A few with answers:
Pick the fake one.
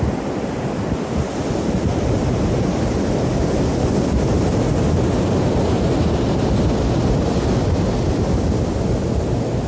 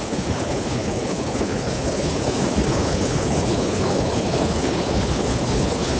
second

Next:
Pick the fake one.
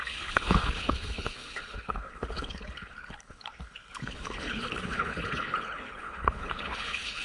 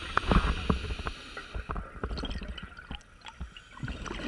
first